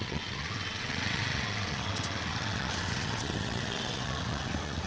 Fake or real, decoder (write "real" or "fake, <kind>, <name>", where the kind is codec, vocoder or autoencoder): fake, vocoder, WaveNeXt